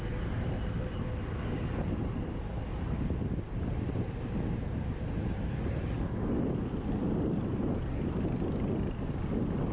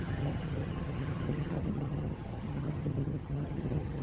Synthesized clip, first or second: second